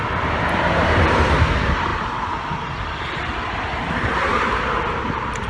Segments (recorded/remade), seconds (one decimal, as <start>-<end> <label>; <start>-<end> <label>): 0.0-5.5 recorded